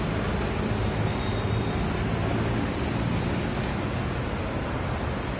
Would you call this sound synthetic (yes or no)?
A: no